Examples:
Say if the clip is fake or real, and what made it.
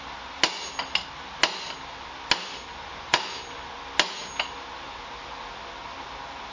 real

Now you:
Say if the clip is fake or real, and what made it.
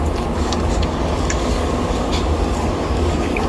fake, codec, DAC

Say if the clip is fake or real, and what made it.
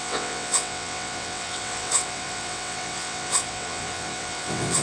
fake, vocoder, WaveNeXt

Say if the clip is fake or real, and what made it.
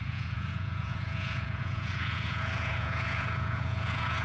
fake, vocoder, Vocos